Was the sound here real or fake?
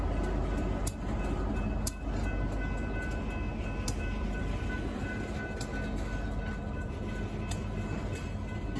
real